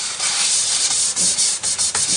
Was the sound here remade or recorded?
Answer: remade